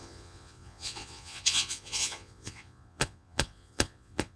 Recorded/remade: remade